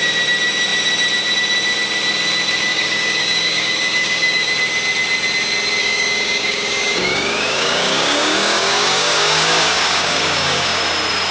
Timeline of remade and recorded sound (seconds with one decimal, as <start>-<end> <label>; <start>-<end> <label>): 0.0-2.7 recorded; 2.7-4.5 remade; 4.5-5.8 recorded; 5.8-10.8 remade; 10.8-11.3 recorded